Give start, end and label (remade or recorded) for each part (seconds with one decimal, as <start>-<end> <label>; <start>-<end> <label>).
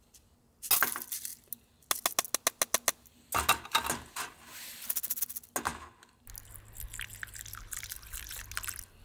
0.0-9.0 recorded